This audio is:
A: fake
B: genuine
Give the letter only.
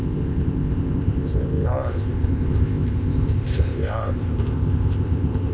A